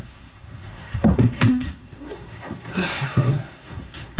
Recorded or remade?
remade